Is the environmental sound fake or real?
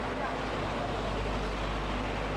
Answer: real